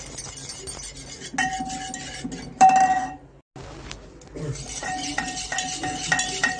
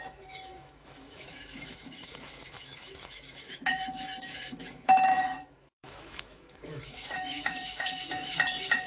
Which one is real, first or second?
first